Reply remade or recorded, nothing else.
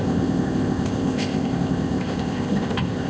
remade